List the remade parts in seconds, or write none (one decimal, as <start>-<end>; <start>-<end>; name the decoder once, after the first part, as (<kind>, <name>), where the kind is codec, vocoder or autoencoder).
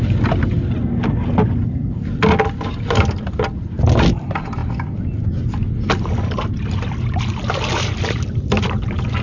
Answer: none